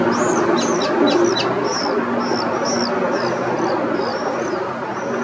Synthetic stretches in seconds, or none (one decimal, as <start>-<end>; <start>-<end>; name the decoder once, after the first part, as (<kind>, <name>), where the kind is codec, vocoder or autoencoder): 4.1-4.7 (vocoder, BigVGAN v2)